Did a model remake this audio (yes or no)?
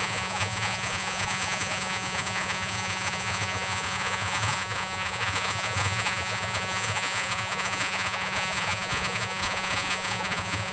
yes